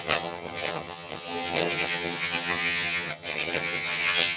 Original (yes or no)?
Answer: no